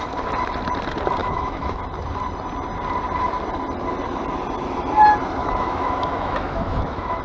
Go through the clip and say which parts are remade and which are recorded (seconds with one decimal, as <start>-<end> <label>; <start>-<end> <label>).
0.0-1.2 recorded; 1.2-1.8 remade; 1.8-5.4 recorded; 5.4-7.2 remade